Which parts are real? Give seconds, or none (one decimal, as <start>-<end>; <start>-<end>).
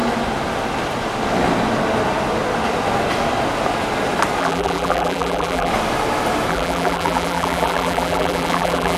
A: 0.0-4.4; 5.7-6.5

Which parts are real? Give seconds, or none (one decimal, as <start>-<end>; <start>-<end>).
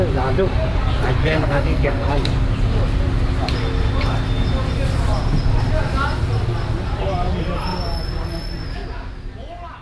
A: 0.0-1.2; 2.1-9.8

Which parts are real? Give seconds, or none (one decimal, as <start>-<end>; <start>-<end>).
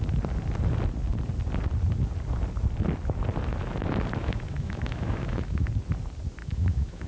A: 0.0-4.2; 5.7-6.4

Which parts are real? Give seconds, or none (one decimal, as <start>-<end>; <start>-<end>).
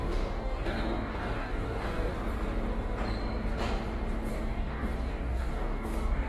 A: 2.1-4.3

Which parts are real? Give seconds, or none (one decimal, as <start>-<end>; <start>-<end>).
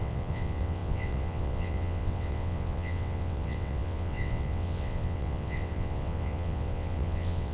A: none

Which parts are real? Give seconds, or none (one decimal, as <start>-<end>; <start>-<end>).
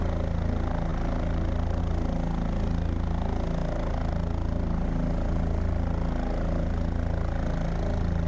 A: 0.0-8.3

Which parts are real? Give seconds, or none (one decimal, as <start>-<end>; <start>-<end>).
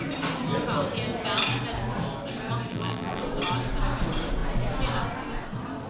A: 0.0-2.7; 3.2-5.9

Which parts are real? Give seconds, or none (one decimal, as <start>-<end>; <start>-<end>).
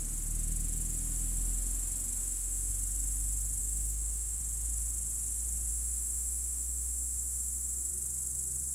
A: 0.0-2.2; 2.7-3.6; 4.4-5.7; 7.9-8.7